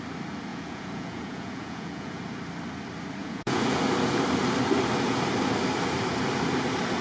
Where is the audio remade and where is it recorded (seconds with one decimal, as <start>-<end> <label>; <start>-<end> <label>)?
0.0-0.5 recorded; 0.5-2.2 remade; 2.2-3.2 recorded; 3.2-3.8 remade; 3.8-7.0 recorded